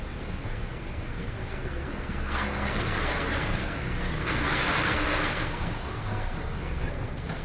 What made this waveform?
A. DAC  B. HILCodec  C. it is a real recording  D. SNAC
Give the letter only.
D